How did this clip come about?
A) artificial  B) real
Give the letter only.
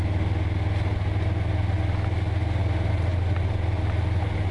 B